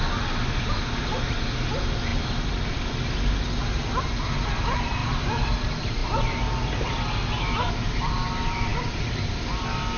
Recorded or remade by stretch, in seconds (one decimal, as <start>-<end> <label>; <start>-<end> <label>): 0.0-10.0 recorded